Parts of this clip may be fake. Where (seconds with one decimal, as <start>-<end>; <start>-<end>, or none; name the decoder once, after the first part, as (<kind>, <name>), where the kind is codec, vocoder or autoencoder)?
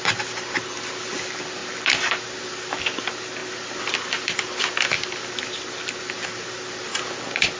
none